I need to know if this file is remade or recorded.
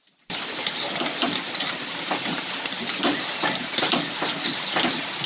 recorded